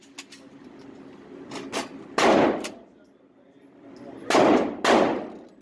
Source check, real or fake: real